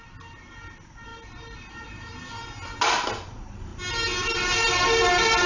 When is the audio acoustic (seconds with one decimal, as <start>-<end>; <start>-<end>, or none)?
0.0-1.1; 2.1-5.5